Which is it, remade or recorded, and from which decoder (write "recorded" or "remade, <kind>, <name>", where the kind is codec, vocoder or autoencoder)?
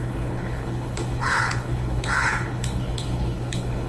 remade, codec, HILCodec